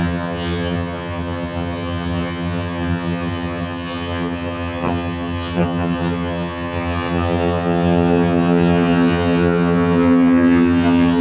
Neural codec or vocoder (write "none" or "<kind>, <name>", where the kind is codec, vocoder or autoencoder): vocoder, HiFi-GAN